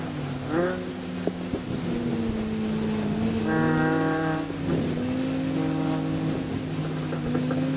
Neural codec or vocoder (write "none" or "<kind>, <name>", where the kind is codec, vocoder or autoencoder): none